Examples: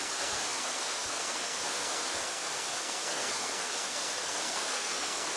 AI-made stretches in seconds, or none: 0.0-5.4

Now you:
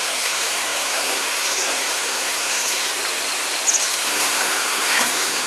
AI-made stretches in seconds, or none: 0.0-2.9; 3.8-5.5

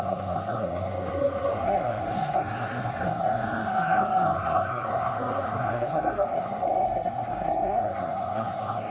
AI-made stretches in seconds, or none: 0.0-8.9

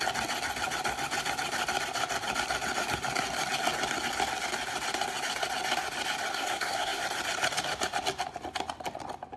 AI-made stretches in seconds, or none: 6.3-7.0

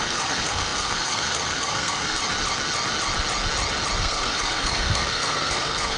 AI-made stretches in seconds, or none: 0.0-2.2; 4.0-6.0

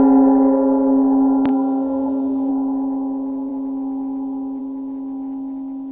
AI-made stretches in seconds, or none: 1.5-2.5